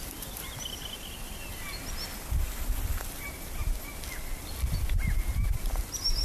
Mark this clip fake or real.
fake